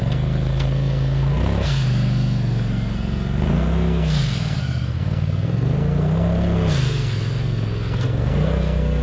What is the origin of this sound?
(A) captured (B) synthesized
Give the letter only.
B